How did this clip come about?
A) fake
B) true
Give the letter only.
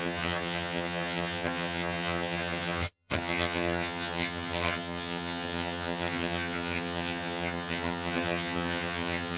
A